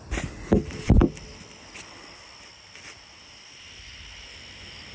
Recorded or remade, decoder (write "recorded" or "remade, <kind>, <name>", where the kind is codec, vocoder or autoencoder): recorded